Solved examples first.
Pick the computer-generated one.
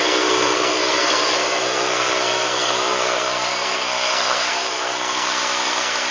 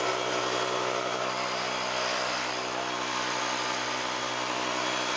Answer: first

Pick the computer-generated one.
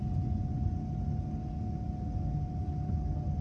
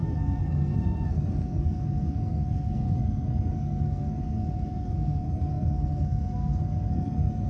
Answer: second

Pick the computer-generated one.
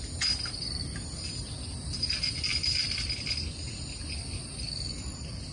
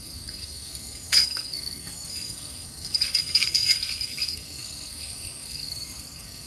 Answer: second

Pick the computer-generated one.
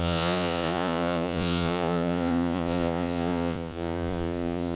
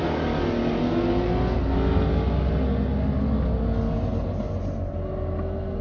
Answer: first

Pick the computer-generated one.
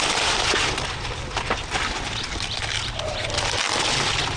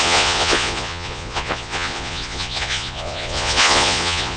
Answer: second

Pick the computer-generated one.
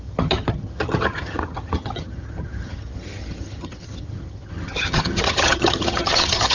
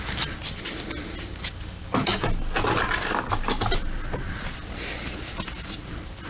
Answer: first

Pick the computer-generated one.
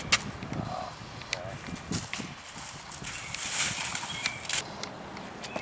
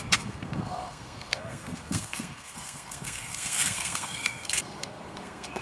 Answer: second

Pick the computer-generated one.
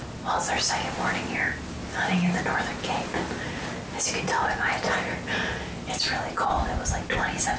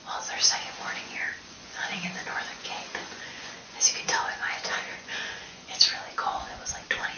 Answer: second